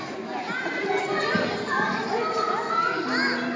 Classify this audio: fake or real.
real